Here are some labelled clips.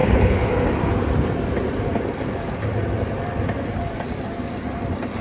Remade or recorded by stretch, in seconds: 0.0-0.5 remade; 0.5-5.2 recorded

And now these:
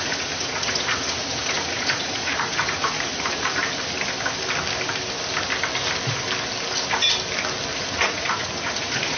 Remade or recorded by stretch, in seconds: 0.0-3.6 remade; 3.6-7.8 recorded; 7.8-9.2 remade